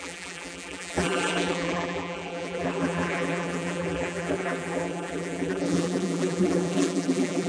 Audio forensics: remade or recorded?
remade